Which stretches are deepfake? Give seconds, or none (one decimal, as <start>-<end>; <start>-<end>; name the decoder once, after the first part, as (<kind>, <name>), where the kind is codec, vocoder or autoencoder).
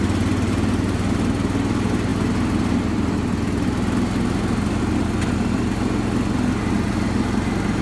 none